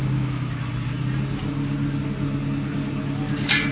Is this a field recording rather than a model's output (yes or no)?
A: yes